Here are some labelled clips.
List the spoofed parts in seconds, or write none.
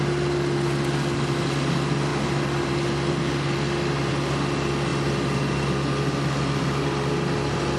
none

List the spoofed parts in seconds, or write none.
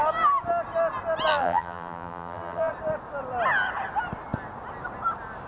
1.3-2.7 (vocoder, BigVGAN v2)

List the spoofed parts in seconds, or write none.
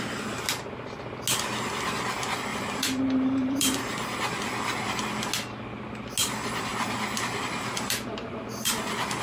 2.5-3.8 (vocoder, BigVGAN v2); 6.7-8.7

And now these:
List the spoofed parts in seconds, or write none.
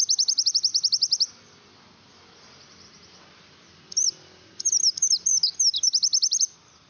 none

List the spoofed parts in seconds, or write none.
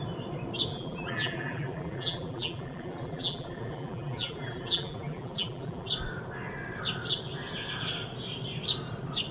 0.7-5.9 (vocoder, BigVGAN v2)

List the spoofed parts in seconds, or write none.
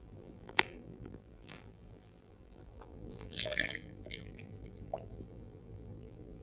0.0-6.4 (vocoder, BigVGAN v2)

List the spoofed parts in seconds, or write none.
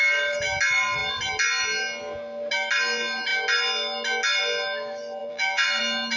5.2-5.8 (vocoder, BigVGAN v2)